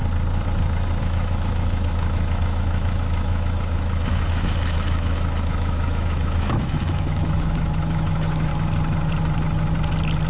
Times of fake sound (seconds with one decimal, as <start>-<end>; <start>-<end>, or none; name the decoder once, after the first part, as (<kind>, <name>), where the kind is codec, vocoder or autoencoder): 1.0-8.5 (autoencoder, DAC-VAE)